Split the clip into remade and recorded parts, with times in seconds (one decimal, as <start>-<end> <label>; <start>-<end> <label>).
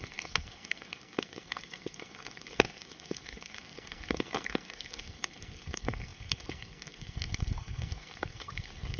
0.0-9.0 remade